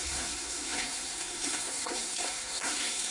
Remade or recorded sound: remade